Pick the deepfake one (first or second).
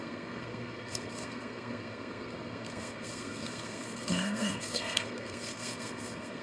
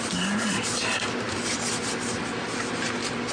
first